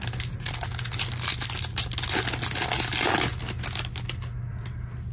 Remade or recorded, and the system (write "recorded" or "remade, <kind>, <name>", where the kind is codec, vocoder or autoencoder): recorded